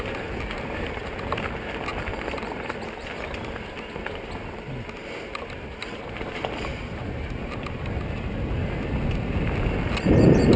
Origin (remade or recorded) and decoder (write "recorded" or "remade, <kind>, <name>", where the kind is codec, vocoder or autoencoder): recorded